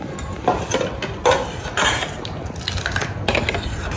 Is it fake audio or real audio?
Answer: real